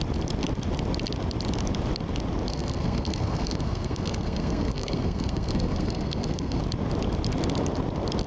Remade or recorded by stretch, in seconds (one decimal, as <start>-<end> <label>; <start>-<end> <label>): 0.0-2.5 recorded; 2.5-6.6 remade; 6.6-8.3 recorded